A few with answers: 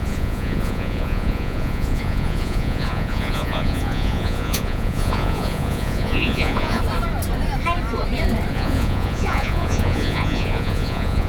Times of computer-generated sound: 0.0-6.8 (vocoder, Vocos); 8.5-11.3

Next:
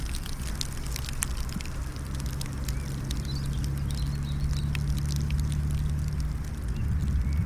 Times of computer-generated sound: none

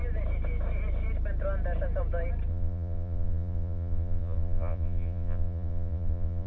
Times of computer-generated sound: 2.5-6.5 (vocoder, Vocos)

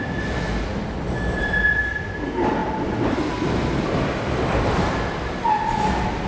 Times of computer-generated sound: none

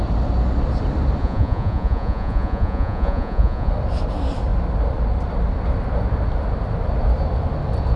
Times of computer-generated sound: 1.2-3.7 (vocoder, Vocos)

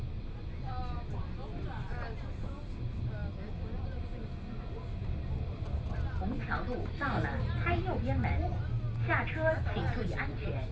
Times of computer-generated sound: none

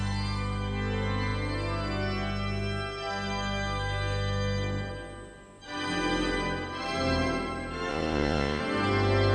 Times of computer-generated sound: 7.9-8.6 (vocoder, Vocos)